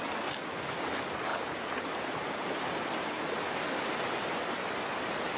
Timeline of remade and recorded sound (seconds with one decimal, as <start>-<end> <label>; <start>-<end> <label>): 0.0-5.4 recorded